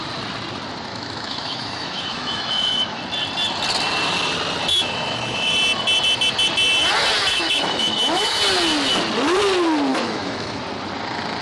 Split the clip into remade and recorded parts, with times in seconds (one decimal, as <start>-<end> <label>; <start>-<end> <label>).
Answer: 0.0-0.9 recorded; 0.9-3.0 remade; 3.0-4.7 recorded; 4.7-5.5 remade; 5.5-7.3 recorded; 7.3-8.4 remade; 8.4-9.9 recorded; 9.9-10.6 remade; 10.6-11.4 recorded